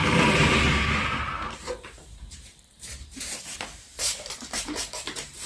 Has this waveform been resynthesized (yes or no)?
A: yes